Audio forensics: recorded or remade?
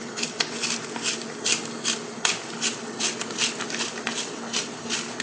recorded